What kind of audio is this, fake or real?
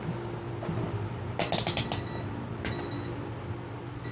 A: real